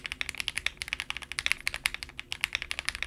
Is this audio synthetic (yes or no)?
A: no